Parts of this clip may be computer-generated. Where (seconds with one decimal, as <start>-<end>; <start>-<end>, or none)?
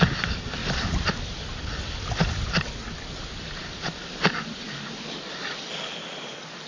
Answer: 0.6-1.1